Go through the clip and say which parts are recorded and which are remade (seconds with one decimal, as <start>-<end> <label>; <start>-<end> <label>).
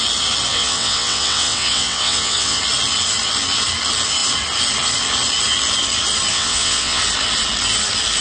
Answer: 0.0-0.5 recorded; 0.5-2.6 remade; 2.6-6.3 recorded; 6.3-7.0 remade; 7.0-8.2 recorded